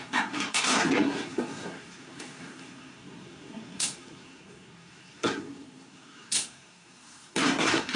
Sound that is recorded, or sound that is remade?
remade